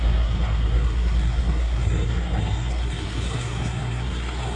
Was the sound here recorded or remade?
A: remade